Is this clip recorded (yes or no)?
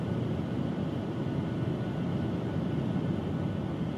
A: yes